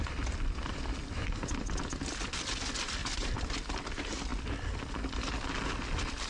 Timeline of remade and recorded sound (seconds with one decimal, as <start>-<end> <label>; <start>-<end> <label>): 0.0-3.0 recorded; 3.0-3.7 remade; 3.7-6.3 recorded